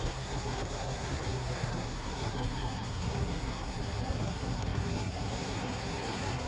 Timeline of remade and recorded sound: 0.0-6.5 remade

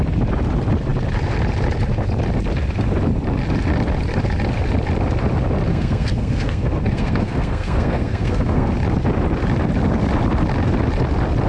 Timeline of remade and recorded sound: 0.0-5.7 recorded; 5.7-8.7 remade; 8.7-11.5 recorded

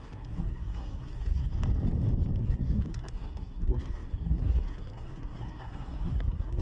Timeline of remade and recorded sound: 0.0-1.5 remade; 1.5-2.4 recorded; 2.4-6.6 remade